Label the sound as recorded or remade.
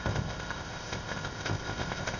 remade